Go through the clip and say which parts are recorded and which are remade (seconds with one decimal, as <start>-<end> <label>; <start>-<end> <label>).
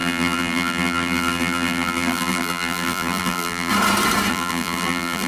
0.0-3.7 remade; 3.7-4.3 recorded; 4.3-5.3 remade